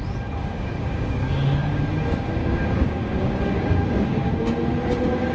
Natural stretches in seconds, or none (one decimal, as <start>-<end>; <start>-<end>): 0.0-0.4; 1.8-2.4; 4.5-5.3